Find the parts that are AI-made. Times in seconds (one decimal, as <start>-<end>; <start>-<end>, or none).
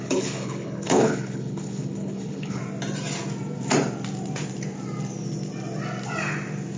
0.0-2.6